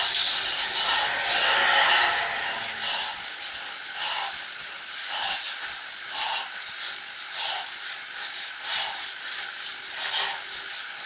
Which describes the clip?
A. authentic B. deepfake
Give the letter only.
A